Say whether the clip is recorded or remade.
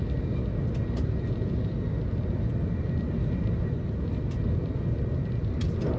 recorded